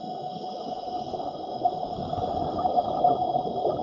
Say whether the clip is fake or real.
real